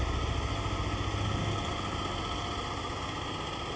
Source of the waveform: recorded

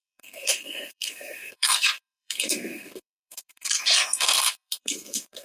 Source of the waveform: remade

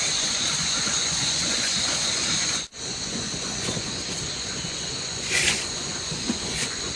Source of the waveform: remade